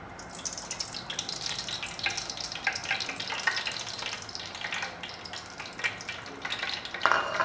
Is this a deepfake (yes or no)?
no